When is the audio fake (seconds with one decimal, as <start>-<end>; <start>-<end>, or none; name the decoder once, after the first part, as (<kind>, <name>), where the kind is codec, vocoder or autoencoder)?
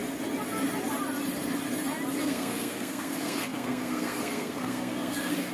2.2-5.5 (codec, SNAC)